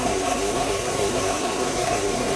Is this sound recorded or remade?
remade